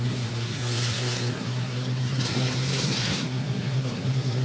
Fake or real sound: fake